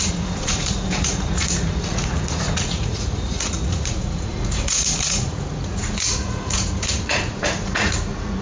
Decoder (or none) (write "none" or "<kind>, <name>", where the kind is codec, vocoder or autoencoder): vocoder, Vocos